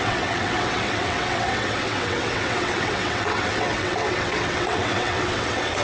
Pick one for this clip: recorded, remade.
remade